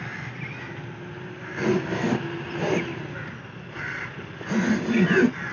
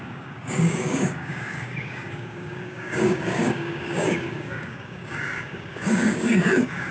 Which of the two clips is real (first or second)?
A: first